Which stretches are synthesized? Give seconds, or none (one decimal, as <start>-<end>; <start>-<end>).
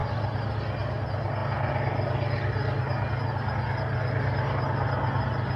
none